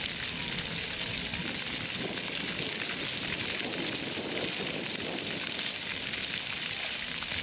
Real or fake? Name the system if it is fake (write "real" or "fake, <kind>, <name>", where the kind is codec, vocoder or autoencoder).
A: real